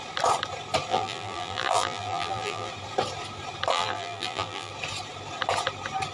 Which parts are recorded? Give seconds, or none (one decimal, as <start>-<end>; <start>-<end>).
0.0-0.9; 2.7-3.7; 4.7-6.1